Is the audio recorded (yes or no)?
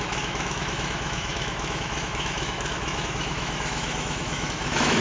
no